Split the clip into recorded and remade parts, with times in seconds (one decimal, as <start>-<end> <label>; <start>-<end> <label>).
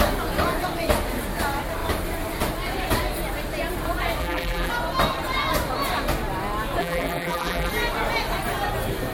0.0-4.2 recorded; 4.2-4.7 remade; 4.7-6.8 recorded; 6.8-7.7 remade; 7.7-9.1 recorded